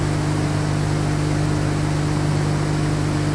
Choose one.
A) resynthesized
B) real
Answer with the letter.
B